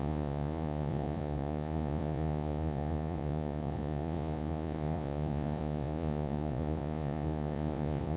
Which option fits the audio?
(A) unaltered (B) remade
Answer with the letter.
B